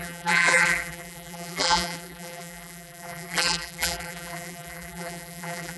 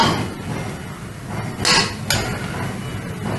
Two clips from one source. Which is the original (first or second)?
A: second